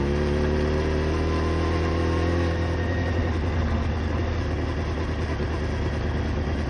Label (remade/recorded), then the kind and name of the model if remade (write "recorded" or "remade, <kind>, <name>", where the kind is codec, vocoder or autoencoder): recorded